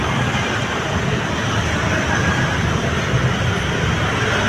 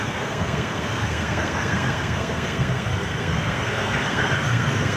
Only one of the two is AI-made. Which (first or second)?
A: second